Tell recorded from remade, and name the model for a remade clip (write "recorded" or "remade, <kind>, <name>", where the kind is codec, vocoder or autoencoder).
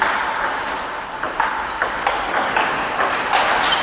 recorded